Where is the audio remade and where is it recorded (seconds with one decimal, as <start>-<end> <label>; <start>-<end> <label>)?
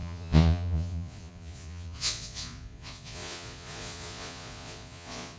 0.0-5.4 remade